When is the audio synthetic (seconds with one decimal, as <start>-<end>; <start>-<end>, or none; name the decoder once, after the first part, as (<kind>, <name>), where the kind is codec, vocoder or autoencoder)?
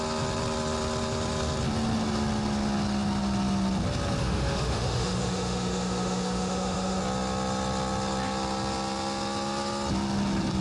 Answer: 4.2-7.0 (autoencoder, DAC-VAE)